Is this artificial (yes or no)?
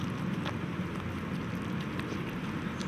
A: no